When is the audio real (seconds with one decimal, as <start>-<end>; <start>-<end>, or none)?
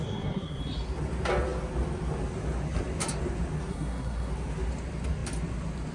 0.6-3.7; 4.3-5.9